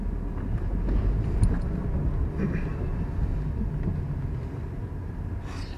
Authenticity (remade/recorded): recorded